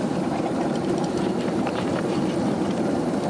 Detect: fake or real fake